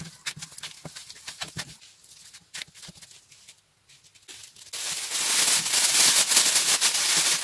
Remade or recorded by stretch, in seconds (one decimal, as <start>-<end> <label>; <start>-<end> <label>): 0.0-1.0 recorded; 1.0-2.0 remade; 2.0-7.4 recorded